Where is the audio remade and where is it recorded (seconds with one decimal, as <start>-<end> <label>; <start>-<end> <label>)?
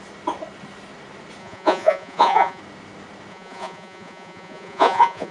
0.0-1.4 recorded; 1.4-2.6 remade; 2.6-3.3 recorded; 3.3-5.3 remade